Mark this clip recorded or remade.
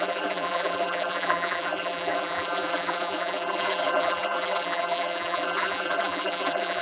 remade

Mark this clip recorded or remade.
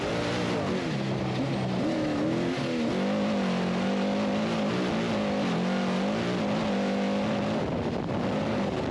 recorded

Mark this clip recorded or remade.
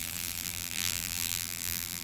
remade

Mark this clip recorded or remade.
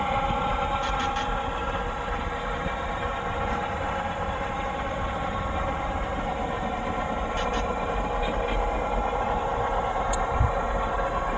remade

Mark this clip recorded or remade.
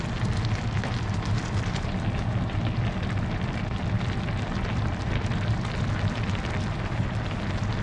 remade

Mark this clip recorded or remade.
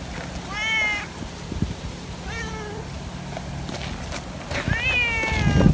recorded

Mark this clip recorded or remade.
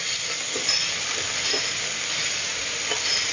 recorded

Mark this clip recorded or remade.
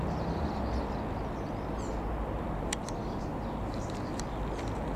recorded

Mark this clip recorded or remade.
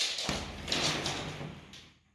recorded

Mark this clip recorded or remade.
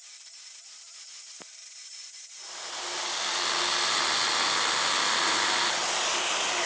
recorded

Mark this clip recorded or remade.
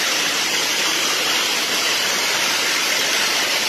remade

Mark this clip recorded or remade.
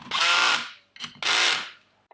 recorded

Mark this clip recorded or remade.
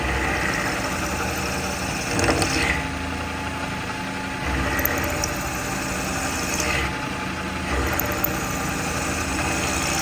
recorded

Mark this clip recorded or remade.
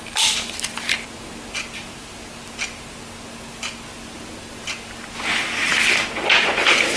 recorded